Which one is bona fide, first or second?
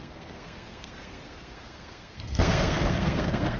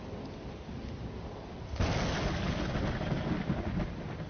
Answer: second